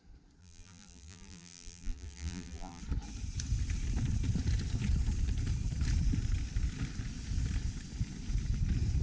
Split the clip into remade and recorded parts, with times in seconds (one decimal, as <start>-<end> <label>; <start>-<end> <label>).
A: 0.0-0.4 recorded; 0.4-2.8 remade; 2.8-9.0 recorded